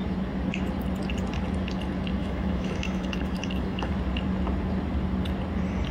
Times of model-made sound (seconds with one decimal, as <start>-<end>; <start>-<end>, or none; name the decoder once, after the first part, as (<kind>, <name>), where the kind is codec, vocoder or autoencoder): 2.2-3.9 (autoencoder, DAC-VAE)